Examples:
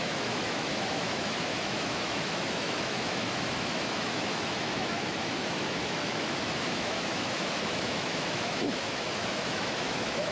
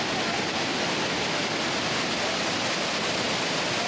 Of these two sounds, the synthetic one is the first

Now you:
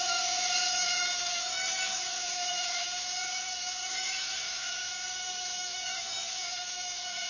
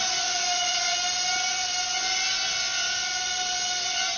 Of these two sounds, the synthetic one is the first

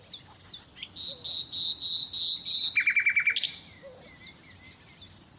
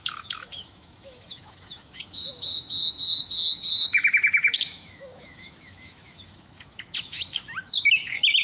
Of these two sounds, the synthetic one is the second